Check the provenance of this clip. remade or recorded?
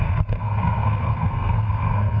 remade